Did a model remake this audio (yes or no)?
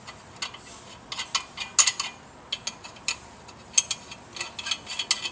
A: no